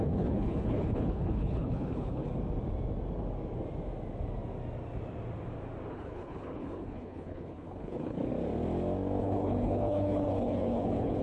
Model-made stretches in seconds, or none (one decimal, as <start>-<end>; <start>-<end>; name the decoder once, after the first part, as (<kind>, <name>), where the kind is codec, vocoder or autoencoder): 0.0-2.3 (codec, HILCodec); 5.9-8.3; 9.2-11.2